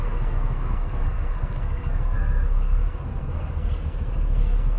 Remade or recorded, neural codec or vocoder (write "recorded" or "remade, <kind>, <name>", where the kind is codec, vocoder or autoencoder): remade, codec, SNAC